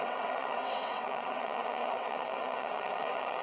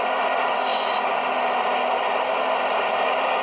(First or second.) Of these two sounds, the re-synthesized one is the first